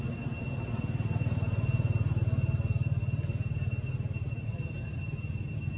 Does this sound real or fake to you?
real